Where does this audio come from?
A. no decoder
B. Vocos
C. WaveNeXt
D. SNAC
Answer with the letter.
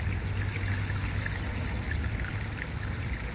A